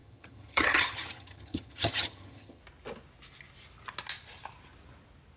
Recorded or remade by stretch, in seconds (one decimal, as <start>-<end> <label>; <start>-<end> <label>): 0.0-2.6 remade; 2.6-5.4 recorded